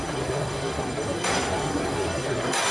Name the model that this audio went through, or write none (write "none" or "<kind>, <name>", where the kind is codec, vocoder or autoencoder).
codec, SNAC